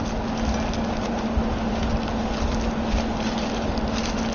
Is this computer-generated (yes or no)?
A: no